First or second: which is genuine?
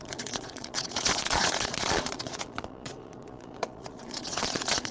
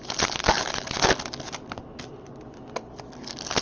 second